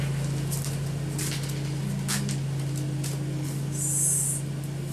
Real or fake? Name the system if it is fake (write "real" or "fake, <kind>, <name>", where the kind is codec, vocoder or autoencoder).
real